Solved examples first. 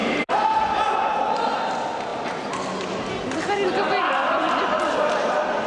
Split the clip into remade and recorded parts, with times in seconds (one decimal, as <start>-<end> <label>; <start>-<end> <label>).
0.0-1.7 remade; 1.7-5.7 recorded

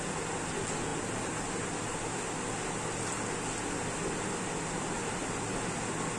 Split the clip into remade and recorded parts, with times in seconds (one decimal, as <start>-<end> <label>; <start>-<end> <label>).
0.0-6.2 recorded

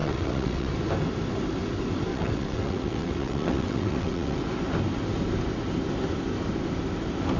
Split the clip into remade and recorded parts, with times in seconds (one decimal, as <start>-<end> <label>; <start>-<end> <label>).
0.0-0.7 remade; 0.7-2.1 recorded; 2.1-4.4 remade; 4.4-7.4 recorded